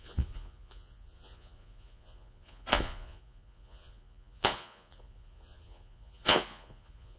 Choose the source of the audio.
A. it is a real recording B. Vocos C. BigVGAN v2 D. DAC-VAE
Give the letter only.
B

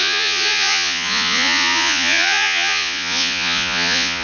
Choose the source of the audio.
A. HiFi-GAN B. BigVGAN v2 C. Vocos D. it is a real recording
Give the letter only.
C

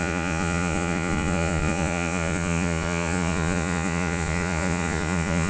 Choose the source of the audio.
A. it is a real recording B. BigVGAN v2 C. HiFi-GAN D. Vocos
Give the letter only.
D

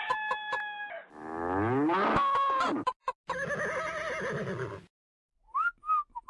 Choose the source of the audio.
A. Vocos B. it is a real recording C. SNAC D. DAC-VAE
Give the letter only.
B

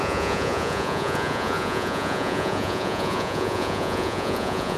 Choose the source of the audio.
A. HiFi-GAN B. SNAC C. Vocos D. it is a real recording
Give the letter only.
C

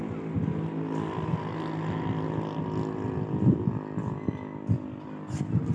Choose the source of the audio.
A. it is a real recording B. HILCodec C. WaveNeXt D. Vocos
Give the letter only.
A